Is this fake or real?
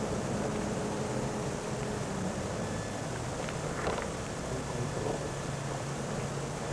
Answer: fake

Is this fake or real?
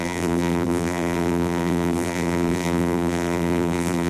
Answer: fake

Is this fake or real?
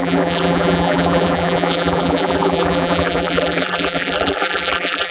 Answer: fake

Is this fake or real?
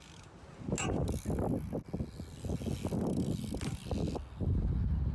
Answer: real